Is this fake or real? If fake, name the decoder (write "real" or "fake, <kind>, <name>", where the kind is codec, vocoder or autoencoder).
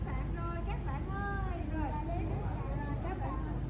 real